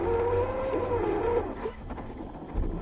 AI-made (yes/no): no